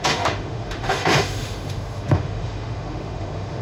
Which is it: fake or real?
fake